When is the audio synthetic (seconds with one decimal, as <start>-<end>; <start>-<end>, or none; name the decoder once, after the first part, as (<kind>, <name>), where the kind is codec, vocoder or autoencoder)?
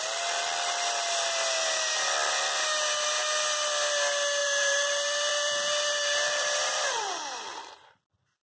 4.4-7.7 (vocoder, BigVGAN v2)